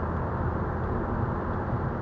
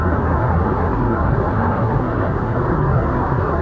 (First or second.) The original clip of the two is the first